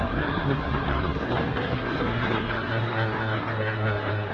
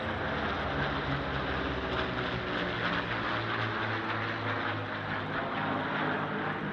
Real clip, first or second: second